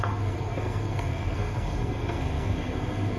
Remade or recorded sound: remade